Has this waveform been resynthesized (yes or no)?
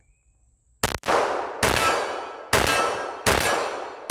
no